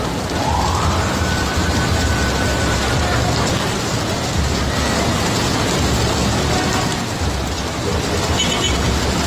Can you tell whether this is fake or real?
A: real